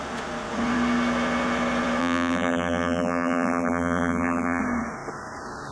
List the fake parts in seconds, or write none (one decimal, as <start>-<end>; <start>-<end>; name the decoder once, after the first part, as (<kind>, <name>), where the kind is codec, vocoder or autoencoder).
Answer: 2.0-4.6 (vocoder, BigVGAN v2)